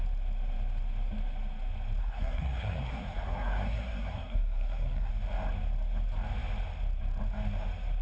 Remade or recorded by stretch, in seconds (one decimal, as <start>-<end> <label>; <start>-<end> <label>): 0.0-2.0 recorded; 2.0-5.1 remade; 5.1-8.0 recorded